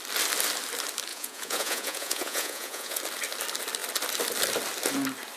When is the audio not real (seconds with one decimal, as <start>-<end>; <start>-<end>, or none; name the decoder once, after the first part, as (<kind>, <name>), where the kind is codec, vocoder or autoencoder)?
1.1-3.0 (vocoder, Vocos)